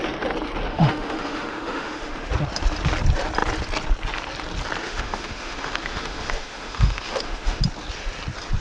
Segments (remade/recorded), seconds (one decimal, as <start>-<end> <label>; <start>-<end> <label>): 0.0-0.7 recorded; 0.7-2.3 remade; 2.3-4.8 recorded; 4.8-7.6 remade; 7.6-8.6 recorded